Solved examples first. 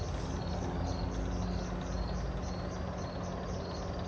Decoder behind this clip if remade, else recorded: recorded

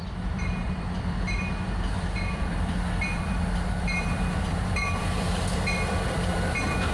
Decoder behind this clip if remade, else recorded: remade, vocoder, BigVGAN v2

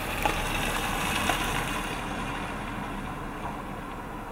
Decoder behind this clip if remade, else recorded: recorded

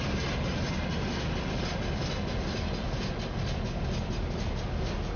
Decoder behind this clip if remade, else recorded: recorded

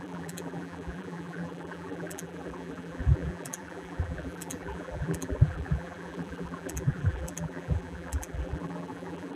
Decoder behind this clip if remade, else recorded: remade, vocoder, BigVGAN v2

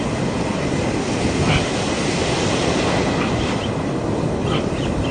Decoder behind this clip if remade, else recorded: recorded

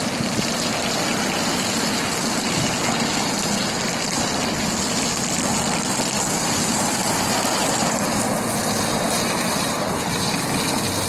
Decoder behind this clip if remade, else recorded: recorded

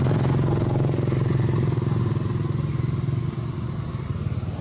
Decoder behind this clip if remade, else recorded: recorded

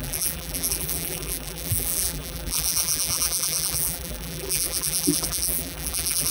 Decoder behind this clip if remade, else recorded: remade, vocoder, BigVGAN v2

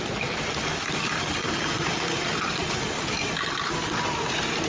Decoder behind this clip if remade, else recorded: remade, vocoder, BigVGAN v2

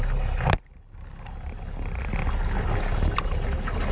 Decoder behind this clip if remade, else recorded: recorded